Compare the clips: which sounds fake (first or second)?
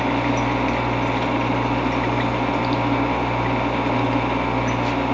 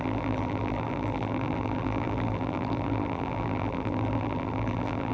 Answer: second